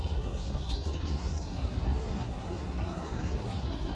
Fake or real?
fake